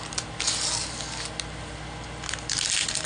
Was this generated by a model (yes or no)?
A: no